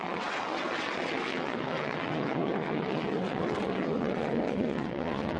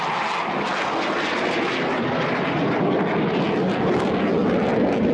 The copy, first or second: first